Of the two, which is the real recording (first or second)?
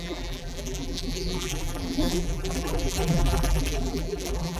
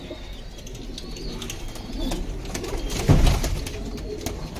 second